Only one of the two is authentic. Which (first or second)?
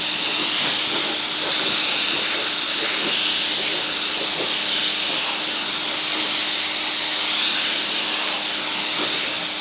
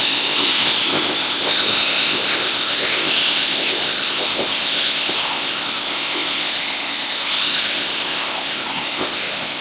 first